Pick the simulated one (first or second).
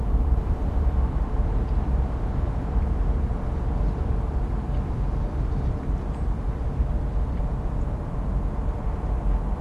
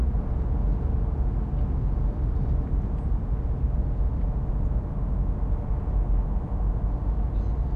first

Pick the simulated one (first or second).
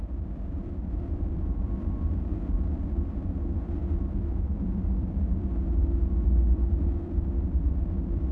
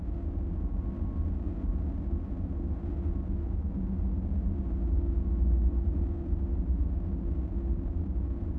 first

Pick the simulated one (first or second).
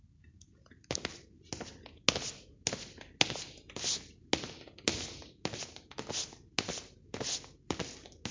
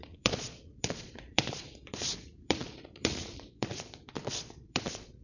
second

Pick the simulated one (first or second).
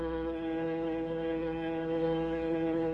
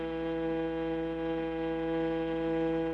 first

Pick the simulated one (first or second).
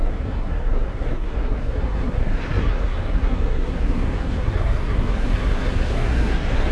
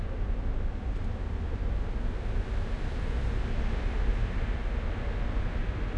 first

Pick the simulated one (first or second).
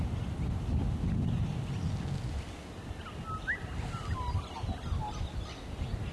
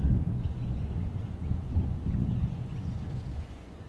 second